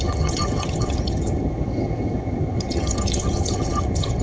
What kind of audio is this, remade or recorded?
remade